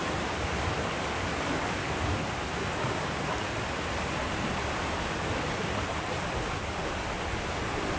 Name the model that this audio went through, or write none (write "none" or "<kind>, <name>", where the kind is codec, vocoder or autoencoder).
none